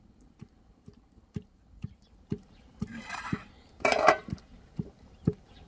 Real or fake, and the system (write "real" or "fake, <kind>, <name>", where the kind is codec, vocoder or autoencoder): fake, vocoder, BigVGAN v2